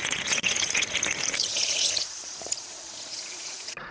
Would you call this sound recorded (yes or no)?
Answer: no